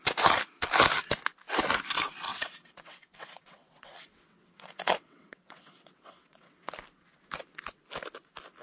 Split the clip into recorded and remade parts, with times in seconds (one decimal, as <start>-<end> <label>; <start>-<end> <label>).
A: 0.0-2.3 recorded; 2.3-6.7 remade; 6.7-8.6 recorded